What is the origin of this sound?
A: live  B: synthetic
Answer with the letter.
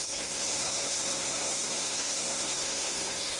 B